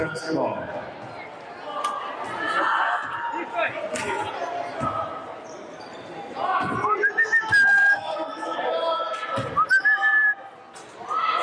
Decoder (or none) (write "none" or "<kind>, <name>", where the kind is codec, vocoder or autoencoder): none